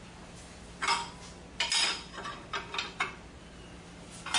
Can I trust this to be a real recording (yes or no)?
yes